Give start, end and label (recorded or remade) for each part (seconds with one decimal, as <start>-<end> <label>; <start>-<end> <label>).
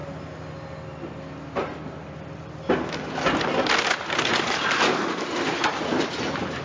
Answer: 0.0-6.6 recorded